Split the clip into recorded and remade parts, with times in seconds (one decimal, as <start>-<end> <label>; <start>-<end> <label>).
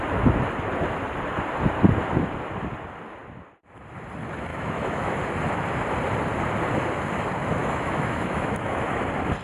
0.0-4.5 recorded; 4.5-5.2 remade; 5.2-7.6 recorded; 7.6-8.9 remade; 8.9-9.4 recorded